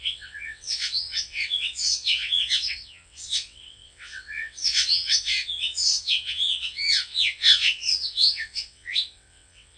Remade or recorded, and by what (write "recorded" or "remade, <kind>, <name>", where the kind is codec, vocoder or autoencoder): remade, vocoder, WaveNeXt